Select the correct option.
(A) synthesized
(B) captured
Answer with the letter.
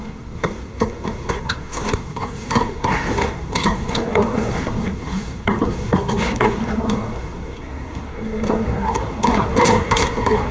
A